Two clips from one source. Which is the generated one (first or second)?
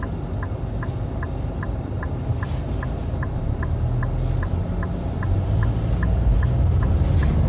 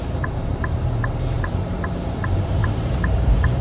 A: second